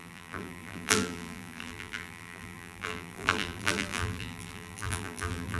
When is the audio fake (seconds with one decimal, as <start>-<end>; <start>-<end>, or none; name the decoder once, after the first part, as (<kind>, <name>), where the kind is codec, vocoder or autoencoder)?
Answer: 0.0-5.6 (vocoder, BigVGAN v2)